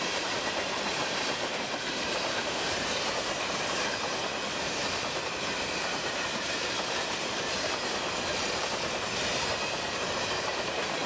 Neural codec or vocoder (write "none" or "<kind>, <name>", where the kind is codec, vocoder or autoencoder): vocoder, BigVGAN v2